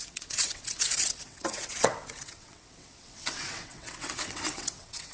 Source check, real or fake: fake